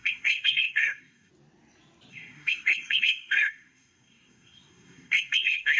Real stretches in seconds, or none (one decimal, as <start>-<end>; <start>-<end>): 1.3-2.1